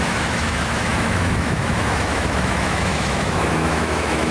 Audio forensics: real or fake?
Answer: fake